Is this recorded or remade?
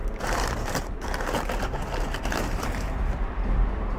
remade